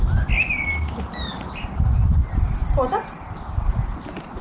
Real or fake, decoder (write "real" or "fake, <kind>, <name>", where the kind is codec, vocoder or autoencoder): real